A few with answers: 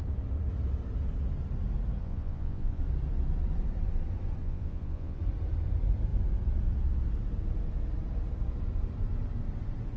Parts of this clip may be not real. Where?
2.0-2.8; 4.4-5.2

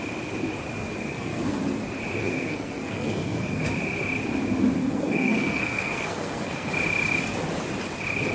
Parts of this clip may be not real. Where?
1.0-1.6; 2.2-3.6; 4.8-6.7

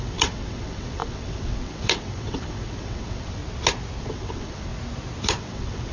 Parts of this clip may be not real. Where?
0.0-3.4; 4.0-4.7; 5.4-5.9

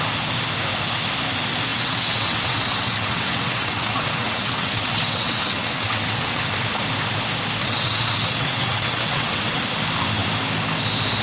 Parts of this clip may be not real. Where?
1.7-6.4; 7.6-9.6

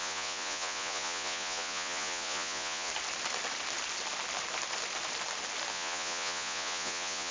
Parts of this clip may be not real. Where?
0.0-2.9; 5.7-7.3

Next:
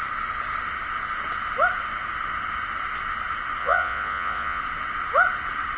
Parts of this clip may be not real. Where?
3.6-4.6

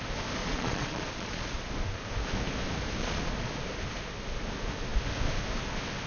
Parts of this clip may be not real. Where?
0.4-1.7; 3.0-3.5

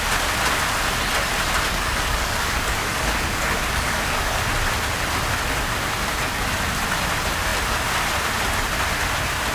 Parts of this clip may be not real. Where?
1.7-4.4